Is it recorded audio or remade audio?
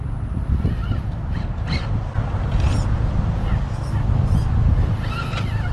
recorded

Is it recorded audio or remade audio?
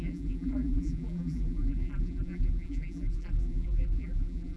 remade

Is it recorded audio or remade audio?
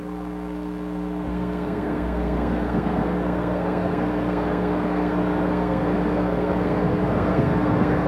remade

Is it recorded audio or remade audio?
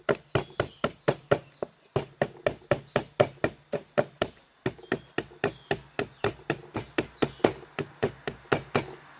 recorded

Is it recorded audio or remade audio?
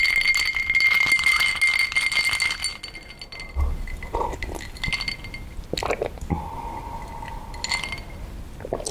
recorded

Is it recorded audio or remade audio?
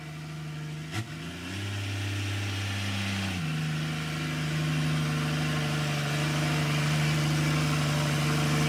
recorded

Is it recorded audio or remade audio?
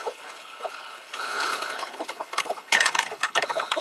remade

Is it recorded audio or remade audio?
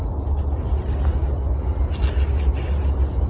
recorded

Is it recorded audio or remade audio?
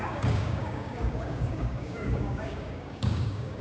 remade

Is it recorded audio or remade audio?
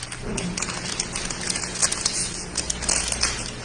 recorded